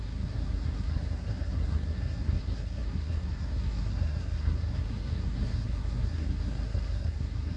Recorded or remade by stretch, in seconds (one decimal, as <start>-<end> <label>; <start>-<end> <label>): 0.0-7.6 remade